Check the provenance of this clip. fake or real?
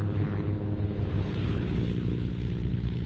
fake